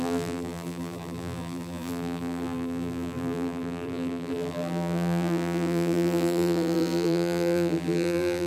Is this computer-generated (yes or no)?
yes